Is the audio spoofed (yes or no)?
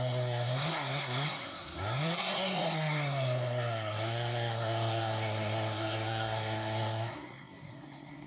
yes